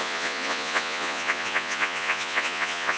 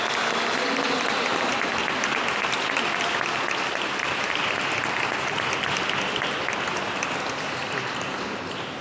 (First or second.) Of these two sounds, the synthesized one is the first